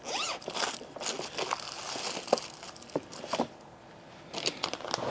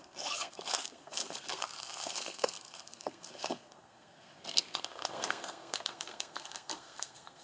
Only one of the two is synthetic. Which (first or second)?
second